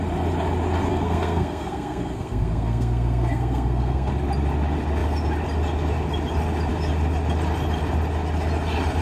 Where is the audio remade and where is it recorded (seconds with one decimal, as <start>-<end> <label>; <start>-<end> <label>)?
0.0-0.9 recorded; 0.9-4.1 remade; 4.1-9.0 recorded